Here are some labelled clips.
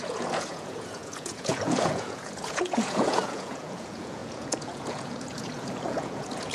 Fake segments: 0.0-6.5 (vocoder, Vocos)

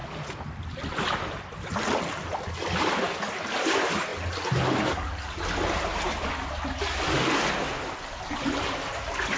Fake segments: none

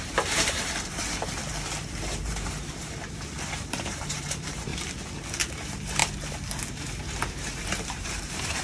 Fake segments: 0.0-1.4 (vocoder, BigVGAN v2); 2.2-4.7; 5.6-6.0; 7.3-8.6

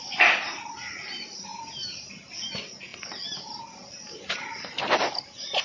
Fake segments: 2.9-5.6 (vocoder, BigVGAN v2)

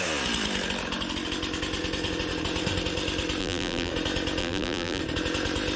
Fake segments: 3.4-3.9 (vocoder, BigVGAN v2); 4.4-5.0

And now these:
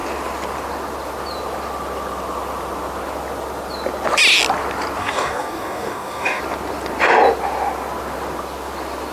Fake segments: 5.0-6.4 (codec, DAC)

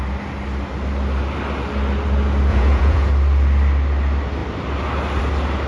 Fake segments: 2.5-3.1 (vocoder, Vocos)

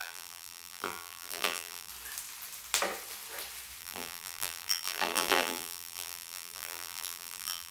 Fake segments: 0.0-1.9 (vocoder, BigVGAN v2); 3.8-7.7